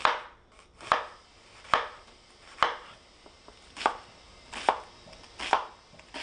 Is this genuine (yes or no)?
yes